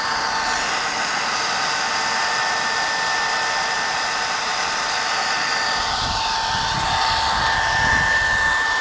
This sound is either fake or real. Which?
real